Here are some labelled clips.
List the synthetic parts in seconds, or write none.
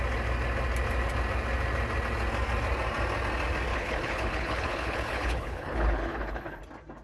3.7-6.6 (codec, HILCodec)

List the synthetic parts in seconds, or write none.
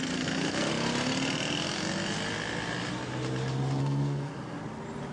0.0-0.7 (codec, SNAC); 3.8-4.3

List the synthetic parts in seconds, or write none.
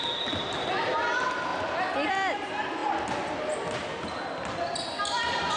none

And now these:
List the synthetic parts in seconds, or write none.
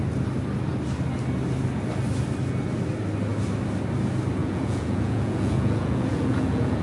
4.4-6.8 (vocoder, Vocos)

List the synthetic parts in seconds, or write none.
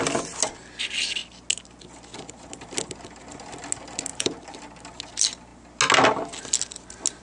4.1-4.6 (vocoder, BigVGAN v2)